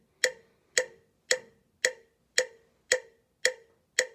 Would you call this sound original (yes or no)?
yes